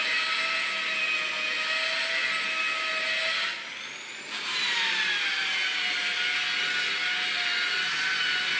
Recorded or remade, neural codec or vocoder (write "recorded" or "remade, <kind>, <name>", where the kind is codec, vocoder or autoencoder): recorded